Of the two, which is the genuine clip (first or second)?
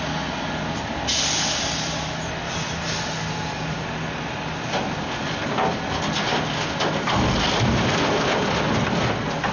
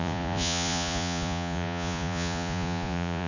first